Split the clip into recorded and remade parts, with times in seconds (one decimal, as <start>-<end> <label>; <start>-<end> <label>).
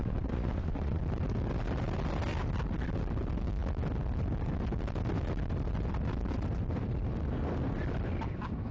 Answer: 0.0-1.0 remade; 1.0-8.7 recorded